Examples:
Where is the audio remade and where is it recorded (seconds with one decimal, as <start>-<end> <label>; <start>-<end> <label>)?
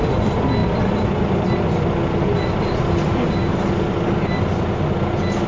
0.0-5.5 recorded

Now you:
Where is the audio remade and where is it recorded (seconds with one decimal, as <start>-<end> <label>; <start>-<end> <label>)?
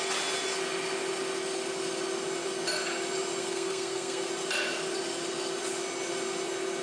0.0-3.4 recorded; 3.4-4.3 remade; 4.3-6.8 recorded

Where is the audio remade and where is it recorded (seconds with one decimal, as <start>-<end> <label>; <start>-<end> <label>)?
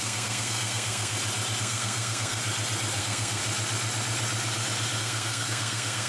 0.0-1.1 remade; 1.1-1.6 recorded; 1.6-2.4 remade; 2.4-3.0 recorded; 3.0-3.4 remade; 3.4-5.0 recorded; 5.0-6.1 remade